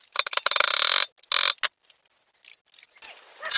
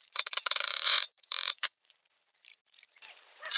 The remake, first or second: second